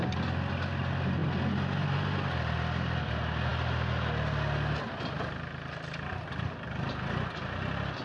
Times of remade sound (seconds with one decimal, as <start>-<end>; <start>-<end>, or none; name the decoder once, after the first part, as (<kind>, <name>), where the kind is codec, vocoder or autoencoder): none